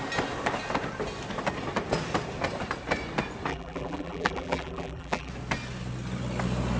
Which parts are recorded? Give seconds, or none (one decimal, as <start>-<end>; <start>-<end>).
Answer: 0.0-3.5; 5.3-6.8